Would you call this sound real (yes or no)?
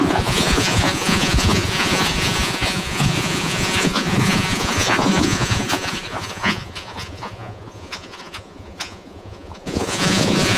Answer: no